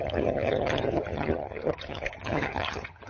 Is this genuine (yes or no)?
no